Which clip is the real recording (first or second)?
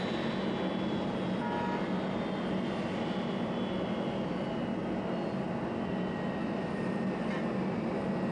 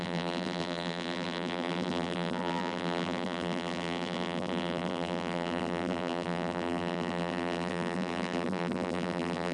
first